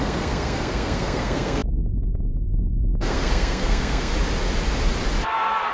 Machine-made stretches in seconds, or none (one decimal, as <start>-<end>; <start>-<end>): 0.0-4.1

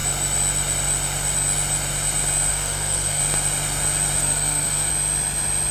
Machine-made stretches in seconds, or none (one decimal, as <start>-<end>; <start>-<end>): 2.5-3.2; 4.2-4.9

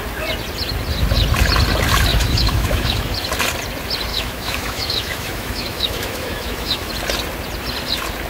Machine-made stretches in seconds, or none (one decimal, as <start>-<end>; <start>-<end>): 2.1-3.1; 4.1-6.9

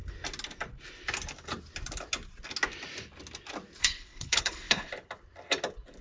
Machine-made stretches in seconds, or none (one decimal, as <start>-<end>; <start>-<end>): 3.8-4.9

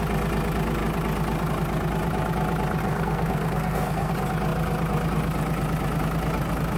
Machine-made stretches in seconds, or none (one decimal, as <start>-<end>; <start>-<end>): 2.8-4.1

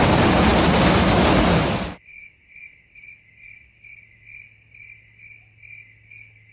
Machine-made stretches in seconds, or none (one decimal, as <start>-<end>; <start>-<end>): none